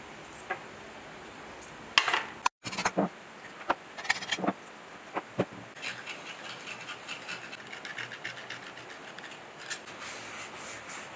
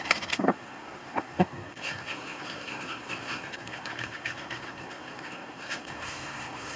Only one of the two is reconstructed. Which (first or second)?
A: second